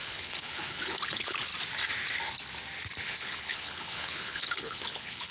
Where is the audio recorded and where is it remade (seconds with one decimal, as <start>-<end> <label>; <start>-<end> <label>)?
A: 0.0-1.5 remade; 1.5-3.0 recorded; 3.0-5.3 remade